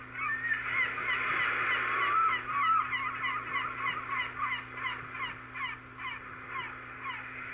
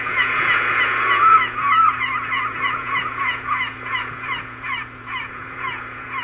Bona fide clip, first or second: first